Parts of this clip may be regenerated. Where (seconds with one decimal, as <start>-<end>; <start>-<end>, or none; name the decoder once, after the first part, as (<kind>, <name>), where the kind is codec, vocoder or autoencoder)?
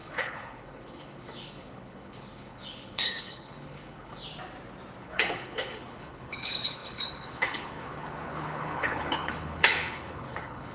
0.0-4.2 (codec, HILCodec); 5.0-10.7